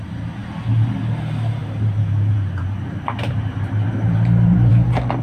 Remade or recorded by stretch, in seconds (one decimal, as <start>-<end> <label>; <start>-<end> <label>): 0.0-1.6 recorded; 1.6-4.7 remade; 4.7-5.2 recorded